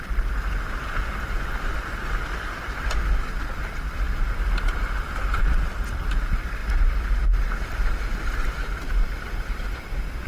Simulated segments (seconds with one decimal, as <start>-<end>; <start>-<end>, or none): none